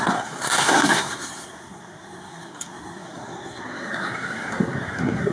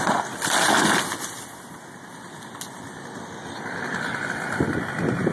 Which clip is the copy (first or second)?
first